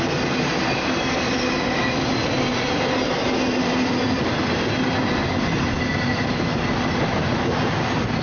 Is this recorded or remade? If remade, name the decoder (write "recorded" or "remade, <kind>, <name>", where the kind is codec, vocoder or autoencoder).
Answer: recorded